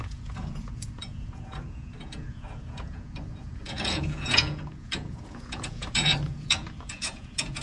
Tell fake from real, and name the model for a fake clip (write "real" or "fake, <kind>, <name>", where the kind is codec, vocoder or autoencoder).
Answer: fake, vocoder, Vocos